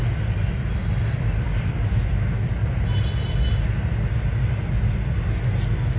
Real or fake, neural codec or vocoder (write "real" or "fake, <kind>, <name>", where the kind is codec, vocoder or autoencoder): real